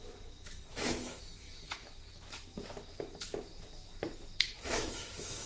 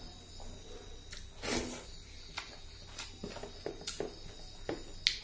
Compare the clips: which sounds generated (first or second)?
first